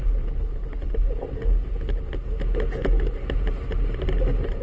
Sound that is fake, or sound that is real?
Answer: real